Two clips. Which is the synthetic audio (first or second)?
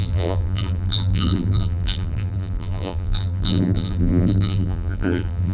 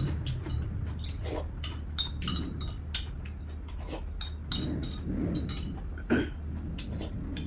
first